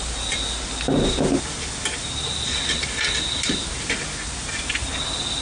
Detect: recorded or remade recorded